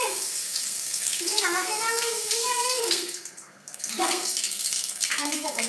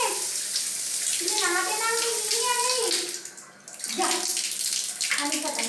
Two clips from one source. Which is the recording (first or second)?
second